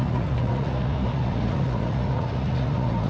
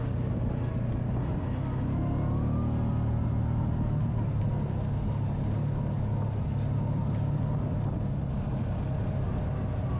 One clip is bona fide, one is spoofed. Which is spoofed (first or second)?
first